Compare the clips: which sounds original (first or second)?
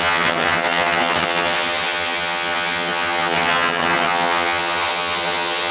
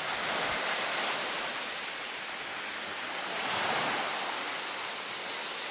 second